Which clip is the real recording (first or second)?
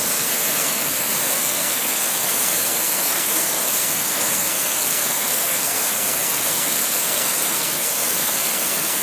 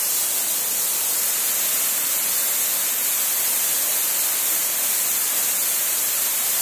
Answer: second